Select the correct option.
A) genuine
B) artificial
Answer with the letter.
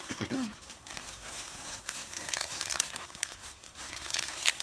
B